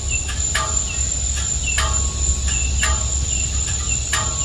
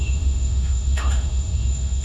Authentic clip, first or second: first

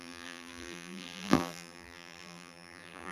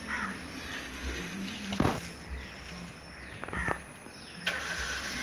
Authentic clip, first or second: second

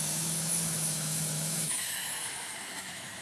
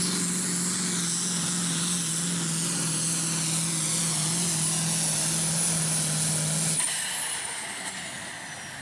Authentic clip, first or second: second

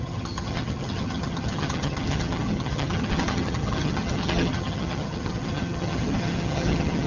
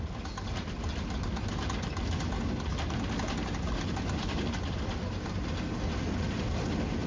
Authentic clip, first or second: second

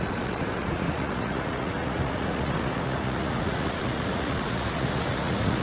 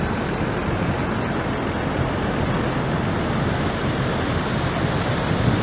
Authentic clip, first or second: second